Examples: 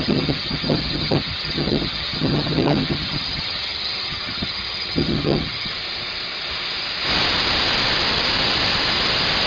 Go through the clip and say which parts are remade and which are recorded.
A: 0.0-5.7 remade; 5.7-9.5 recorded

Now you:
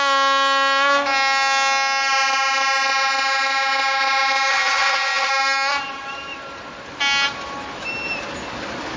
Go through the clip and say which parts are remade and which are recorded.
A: 0.0-4.5 recorded; 4.5-5.3 remade; 5.3-9.0 recorded

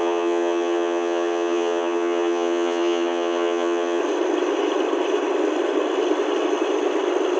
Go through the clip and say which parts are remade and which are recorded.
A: 0.0-4.0 remade; 4.0-7.4 recorded

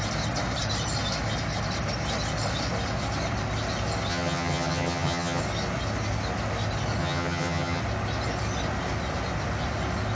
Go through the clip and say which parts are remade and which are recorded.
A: 0.0-4.1 recorded; 4.1-5.4 remade; 5.4-7.0 recorded; 7.0-7.8 remade; 7.8-10.1 recorded

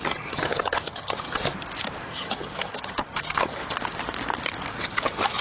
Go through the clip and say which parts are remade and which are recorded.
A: 0.0-1.4 remade; 1.4-2.1 recorded; 2.1-3.6 remade; 3.6-4.8 recorded; 4.8-5.4 remade